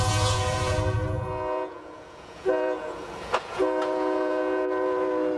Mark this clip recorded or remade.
remade